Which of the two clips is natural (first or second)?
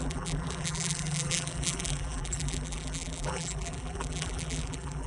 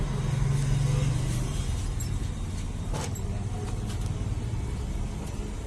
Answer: second